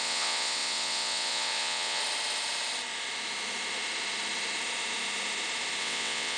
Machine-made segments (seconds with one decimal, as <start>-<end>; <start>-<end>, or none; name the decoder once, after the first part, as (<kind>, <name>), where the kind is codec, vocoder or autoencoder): 0.0-2.0 (vocoder, WaveNeXt); 5.8-6.4